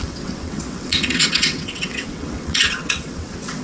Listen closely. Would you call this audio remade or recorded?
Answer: remade